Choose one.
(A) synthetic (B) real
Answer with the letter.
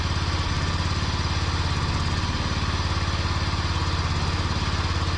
B